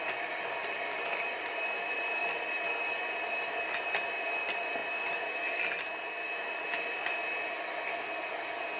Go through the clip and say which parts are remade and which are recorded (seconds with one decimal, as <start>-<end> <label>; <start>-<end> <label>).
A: 0.0-8.8 recorded

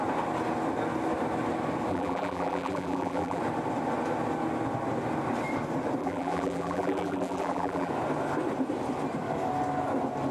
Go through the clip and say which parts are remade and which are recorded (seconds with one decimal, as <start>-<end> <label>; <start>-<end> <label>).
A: 0.0-1.9 recorded; 1.9-3.4 remade; 3.4-6.0 recorded; 6.0-7.9 remade; 7.9-10.3 recorded

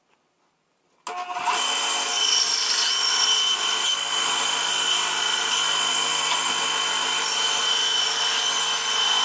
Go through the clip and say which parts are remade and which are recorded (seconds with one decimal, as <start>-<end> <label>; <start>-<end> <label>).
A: 0.0-9.2 recorded

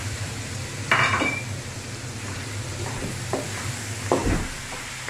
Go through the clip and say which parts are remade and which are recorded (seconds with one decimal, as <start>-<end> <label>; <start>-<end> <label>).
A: 0.0-3.1 remade; 3.1-4.2 recorded; 4.2-5.1 remade

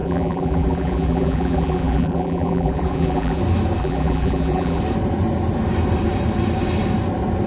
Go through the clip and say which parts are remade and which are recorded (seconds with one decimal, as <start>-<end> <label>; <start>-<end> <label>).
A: 0.0-3.4 remade; 3.4-3.8 recorded; 3.8-4.8 remade; 4.8-7.5 recorded

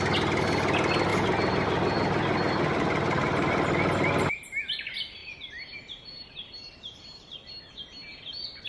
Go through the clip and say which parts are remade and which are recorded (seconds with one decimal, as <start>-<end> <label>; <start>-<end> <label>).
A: 0.0-5.2 recorded; 5.2-7.6 remade; 7.6-8.7 recorded

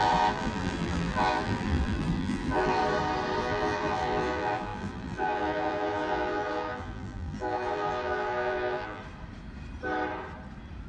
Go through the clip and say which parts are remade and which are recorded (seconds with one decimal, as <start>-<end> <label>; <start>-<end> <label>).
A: 0.0-2.8 remade; 2.8-3.4 recorded; 3.4-9.0 remade; 9.0-10.9 recorded

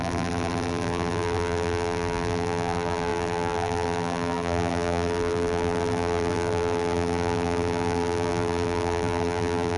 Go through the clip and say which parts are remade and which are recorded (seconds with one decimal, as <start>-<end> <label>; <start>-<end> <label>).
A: 0.0-9.8 remade